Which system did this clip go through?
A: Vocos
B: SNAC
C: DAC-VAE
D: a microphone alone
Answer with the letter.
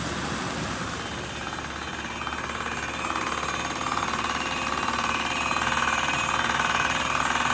D